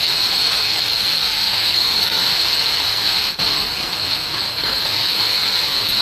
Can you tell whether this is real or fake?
fake